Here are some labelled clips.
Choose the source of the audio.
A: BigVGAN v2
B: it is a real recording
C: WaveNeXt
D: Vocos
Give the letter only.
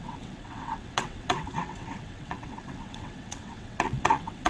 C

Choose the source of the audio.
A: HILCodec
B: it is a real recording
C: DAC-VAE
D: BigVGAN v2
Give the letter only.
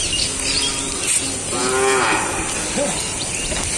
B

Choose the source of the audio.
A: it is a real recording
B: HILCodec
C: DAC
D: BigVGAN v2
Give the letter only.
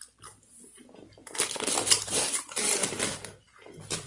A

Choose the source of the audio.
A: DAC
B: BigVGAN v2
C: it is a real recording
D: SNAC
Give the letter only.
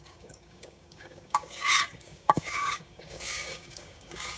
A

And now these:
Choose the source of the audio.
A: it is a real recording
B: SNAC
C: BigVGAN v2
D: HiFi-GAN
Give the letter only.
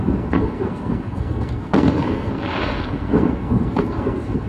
B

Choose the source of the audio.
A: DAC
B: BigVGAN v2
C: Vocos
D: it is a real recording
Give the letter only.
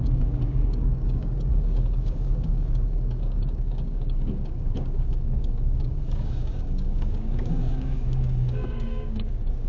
A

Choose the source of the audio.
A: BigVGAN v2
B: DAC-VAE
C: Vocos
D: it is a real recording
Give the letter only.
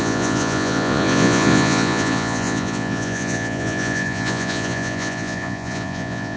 C